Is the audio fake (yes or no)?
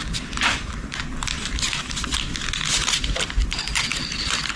no